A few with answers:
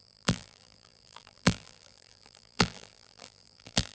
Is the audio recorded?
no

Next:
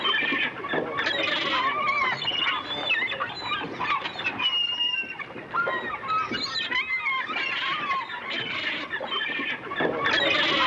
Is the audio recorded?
yes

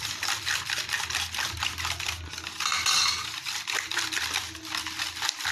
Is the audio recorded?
yes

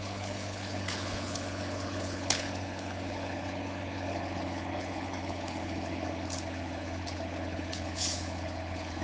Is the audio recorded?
no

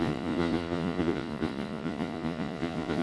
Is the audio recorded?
no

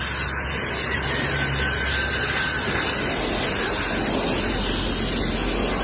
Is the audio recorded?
yes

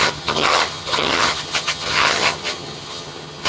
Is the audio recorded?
no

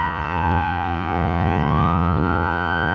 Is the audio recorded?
no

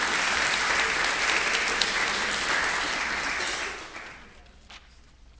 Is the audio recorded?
yes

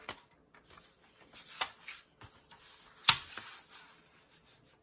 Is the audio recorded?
yes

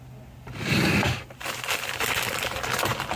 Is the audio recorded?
yes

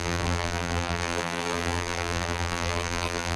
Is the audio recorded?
no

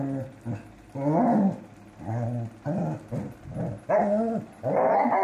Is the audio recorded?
yes